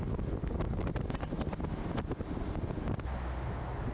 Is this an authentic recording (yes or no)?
yes